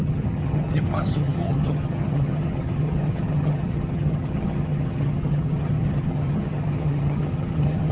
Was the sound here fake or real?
fake